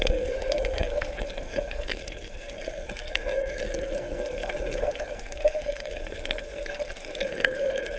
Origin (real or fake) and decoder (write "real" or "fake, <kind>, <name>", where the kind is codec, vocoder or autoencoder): fake, codec, SNAC